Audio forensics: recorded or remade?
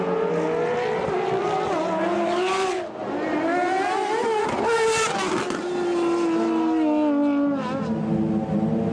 recorded